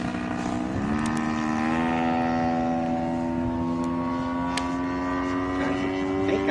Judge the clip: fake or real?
real